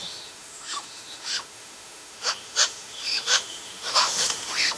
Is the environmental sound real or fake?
fake